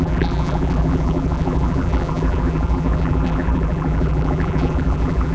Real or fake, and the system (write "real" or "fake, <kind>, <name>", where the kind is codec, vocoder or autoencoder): fake, vocoder, BigVGAN v2